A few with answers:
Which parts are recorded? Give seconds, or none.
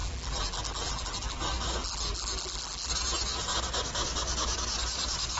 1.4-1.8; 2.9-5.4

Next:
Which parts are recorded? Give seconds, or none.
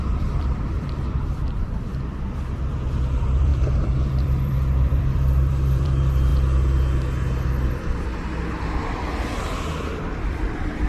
6.3-10.3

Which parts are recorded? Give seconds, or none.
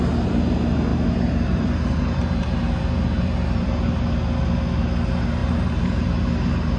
0.0-0.9; 4.1-5.4; 6.2-6.8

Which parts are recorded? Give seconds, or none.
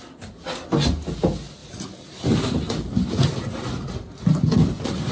0.0-5.1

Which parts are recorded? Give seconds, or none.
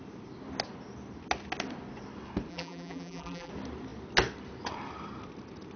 0.0-2.5; 3.5-5.8